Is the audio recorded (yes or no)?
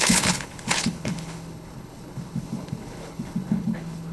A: no